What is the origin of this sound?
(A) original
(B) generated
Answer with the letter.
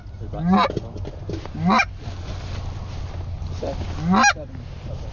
A